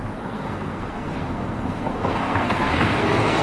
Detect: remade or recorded remade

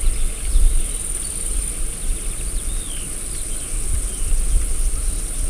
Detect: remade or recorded recorded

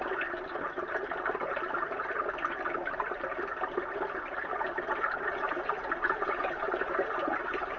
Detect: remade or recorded recorded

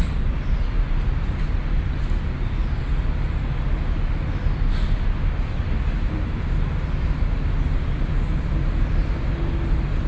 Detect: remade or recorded recorded